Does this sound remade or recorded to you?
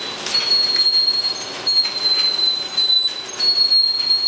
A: recorded